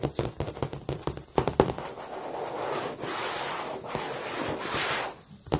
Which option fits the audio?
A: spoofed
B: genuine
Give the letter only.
B